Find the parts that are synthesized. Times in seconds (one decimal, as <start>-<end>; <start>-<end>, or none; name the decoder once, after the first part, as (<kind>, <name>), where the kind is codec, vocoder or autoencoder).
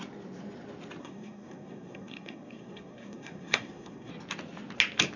1.0-4.1 (codec, SNAC)